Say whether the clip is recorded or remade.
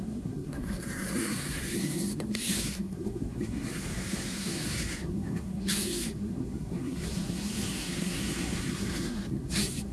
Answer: remade